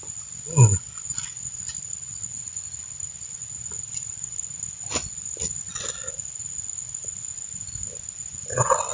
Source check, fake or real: real